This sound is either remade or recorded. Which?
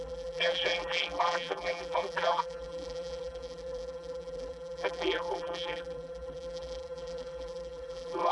remade